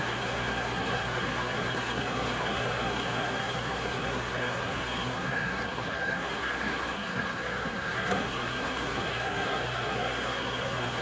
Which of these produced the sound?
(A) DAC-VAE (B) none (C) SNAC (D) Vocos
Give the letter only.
C